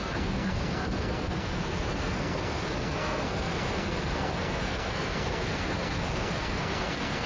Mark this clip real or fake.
fake